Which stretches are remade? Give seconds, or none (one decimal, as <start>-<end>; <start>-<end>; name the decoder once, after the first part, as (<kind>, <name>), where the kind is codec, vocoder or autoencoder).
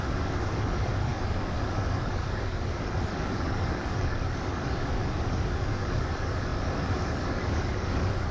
0.0-8.3 (codec, DAC)